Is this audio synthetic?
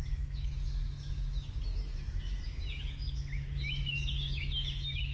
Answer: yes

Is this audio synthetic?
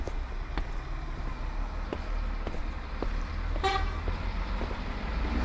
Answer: no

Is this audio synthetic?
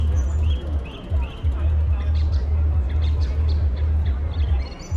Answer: no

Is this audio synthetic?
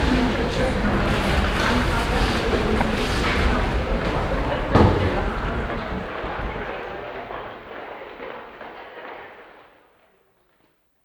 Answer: no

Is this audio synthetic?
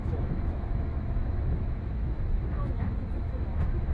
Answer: yes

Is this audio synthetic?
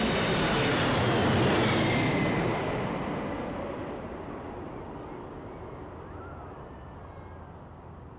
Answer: no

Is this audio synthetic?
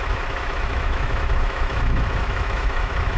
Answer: yes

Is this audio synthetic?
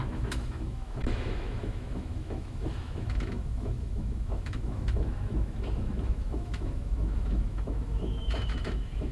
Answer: yes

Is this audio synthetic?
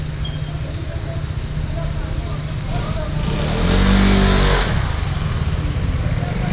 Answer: no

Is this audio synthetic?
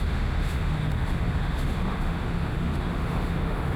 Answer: yes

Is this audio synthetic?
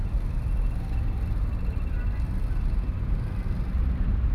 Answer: no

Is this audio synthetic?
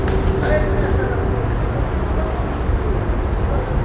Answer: no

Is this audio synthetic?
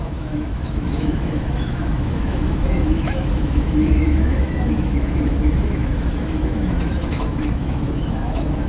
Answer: yes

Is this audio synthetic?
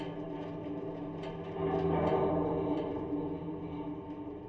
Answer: no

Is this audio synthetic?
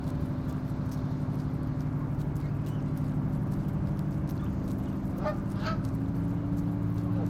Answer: no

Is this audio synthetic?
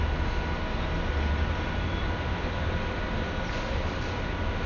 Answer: no